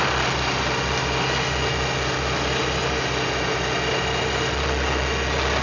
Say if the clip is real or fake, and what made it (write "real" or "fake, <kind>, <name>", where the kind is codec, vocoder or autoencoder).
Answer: real